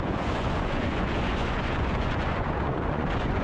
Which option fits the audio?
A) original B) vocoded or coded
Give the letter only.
B